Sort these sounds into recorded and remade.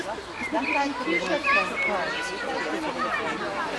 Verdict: recorded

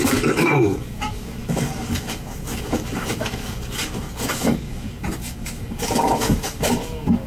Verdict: remade